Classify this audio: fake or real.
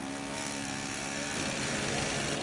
real